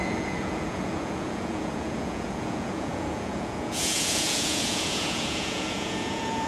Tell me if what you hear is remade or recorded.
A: remade